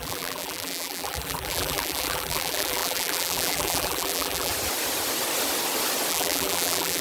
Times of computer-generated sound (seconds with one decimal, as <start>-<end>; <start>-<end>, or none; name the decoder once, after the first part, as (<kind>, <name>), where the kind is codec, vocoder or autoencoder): 0.0-4.5 (vocoder, BigVGAN v2); 6.1-7.0